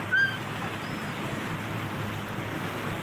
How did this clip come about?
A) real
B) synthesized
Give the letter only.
A